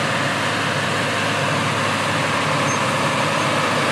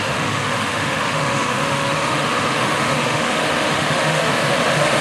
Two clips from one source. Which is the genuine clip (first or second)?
first